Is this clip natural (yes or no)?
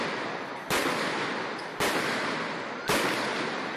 yes